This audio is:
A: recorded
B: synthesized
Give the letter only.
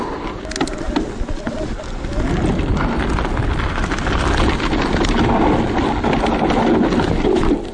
A